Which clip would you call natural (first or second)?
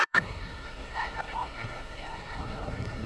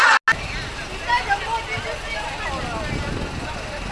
second